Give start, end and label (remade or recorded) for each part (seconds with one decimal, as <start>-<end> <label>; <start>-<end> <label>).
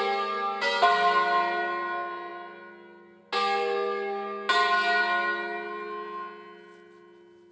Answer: 0.0-7.5 recorded